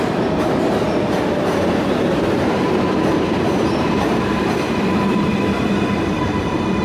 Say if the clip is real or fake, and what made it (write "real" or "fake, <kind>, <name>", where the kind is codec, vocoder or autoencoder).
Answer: fake, vocoder, BigVGAN v2